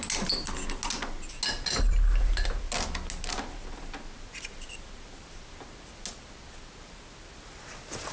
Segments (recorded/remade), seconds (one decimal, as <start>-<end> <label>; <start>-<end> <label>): 0.0-8.1 recorded